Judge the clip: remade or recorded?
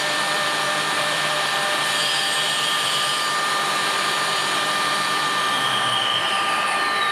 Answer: remade